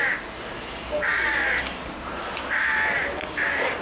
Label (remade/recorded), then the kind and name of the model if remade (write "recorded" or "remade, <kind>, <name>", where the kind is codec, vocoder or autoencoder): recorded